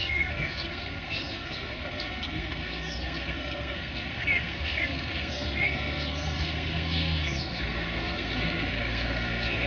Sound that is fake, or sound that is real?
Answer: fake